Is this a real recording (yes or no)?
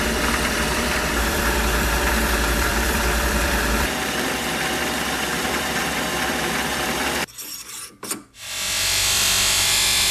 no